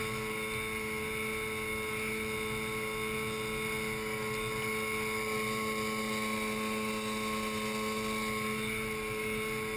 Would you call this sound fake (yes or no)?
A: no